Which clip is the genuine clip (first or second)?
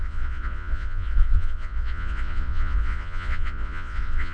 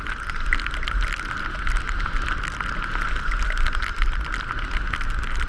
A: second